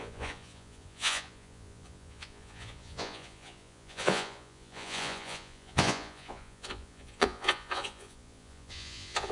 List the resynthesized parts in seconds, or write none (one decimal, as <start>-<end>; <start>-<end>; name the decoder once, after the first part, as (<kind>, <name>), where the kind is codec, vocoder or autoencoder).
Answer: 0.0-9.3 (vocoder, Vocos)

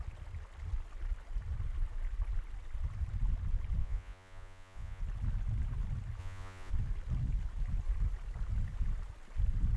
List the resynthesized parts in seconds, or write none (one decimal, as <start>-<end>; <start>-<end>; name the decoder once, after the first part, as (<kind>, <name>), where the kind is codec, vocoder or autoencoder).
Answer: 3.8-5.0 (vocoder, Vocos); 6.2-6.7